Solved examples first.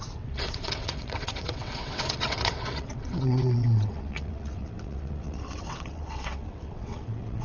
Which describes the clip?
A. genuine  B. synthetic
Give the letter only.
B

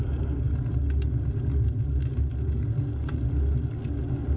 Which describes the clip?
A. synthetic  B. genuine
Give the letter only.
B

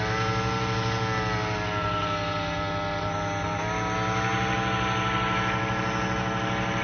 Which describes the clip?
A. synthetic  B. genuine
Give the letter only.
B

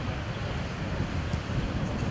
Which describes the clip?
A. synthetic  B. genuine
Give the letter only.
B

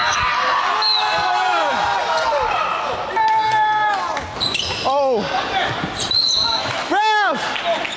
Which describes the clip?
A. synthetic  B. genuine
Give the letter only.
B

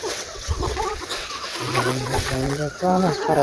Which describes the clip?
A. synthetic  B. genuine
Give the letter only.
A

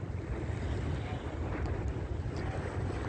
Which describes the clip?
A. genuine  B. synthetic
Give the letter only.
A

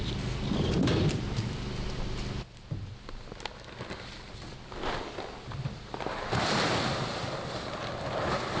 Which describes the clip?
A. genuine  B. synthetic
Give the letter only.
A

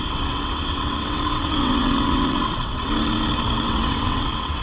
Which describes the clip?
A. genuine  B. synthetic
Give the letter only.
B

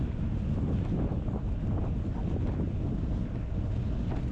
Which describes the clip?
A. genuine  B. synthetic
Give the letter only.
A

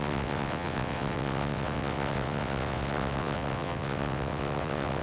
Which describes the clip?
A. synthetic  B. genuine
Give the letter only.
A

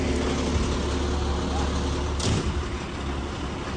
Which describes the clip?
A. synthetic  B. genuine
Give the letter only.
B